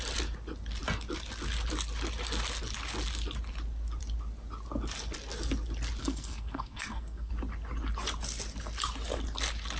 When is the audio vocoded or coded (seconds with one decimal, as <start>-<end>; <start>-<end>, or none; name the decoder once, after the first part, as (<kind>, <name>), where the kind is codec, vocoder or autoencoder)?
6.0-7.3 (codec, SNAC)